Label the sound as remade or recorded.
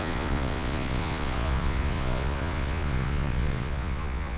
remade